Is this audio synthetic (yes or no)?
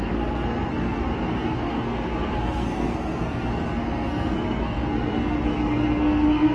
yes